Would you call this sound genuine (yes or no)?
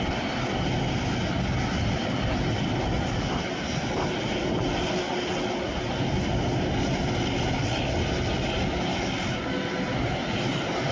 yes